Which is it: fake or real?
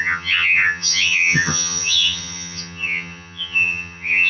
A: fake